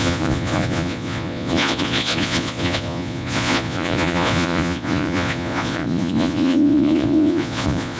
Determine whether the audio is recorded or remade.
remade